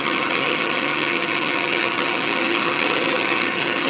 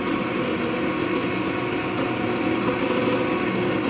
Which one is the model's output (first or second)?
first